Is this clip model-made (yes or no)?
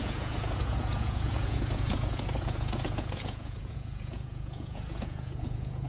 yes